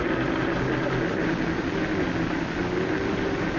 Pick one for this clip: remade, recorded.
recorded